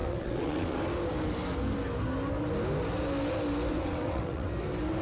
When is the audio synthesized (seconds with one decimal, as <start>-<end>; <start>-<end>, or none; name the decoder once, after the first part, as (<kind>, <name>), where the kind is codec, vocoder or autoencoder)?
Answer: 0.0-0.8 (vocoder, WaveNeXt); 3.7-4.5